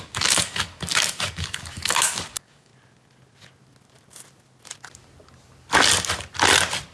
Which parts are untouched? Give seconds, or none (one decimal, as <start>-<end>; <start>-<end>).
2.7-6.9